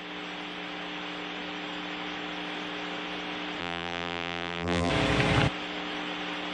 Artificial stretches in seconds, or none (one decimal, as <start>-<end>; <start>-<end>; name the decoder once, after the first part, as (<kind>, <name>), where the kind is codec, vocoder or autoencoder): 3.6-4.9 (vocoder, BigVGAN v2)